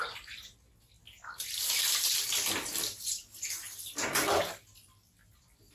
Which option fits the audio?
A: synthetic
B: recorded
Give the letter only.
B